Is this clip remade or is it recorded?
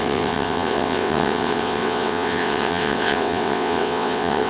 remade